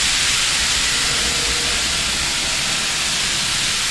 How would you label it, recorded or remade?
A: recorded